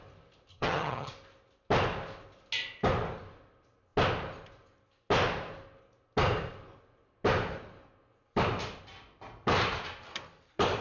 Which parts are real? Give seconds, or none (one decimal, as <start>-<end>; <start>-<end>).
0.0-0.5; 1.1-10.8